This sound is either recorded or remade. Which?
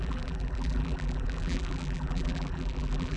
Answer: remade